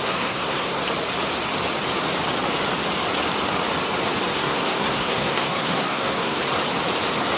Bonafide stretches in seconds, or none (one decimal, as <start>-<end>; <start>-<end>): 0.8-4.3; 6.4-7.4